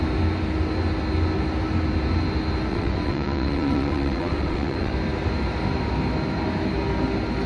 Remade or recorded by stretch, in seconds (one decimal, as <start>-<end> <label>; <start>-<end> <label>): 0.0-2.7 recorded; 2.7-4.9 remade; 4.9-7.5 recorded